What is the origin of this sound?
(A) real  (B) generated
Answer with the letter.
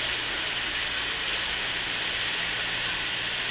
A